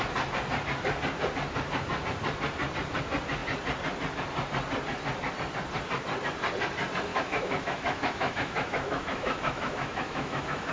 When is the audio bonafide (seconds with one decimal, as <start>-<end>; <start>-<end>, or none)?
0.0-7.1